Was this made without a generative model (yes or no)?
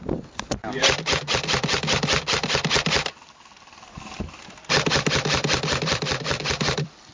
no